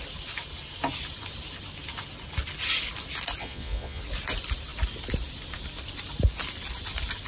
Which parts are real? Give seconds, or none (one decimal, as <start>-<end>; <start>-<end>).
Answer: 0.0-3.4; 4.0-7.3